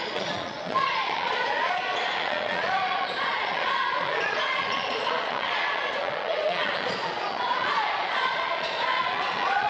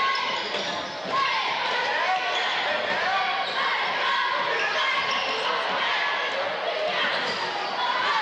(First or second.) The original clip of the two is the second